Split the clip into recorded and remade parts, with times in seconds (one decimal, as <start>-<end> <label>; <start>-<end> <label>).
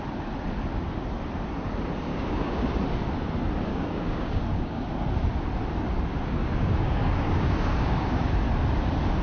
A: 0.0-2.1 recorded; 2.1-2.7 remade; 2.7-3.7 recorded; 3.7-4.9 remade; 4.9-6.1 recorded; 6.1-8.3 remade; 8.3-9.2 recorded